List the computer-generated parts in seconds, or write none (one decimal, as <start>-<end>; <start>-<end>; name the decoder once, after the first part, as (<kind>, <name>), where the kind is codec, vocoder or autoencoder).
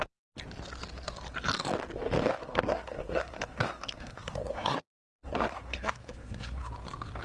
2.4-6.7 (codec, SNAC)